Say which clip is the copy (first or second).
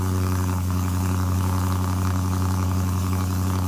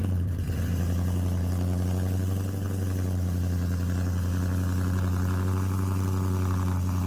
first